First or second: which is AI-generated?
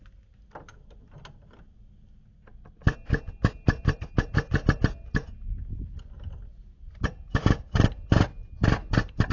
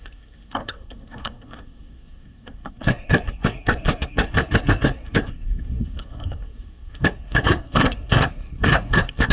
second